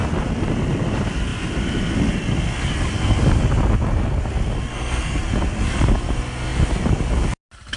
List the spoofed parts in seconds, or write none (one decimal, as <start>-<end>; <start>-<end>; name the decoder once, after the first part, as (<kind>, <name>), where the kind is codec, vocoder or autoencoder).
4.7-5.2 (codec, SNAC)